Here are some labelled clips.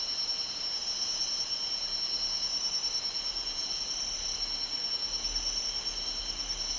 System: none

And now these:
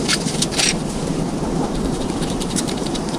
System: vocoder, BigVGAN v2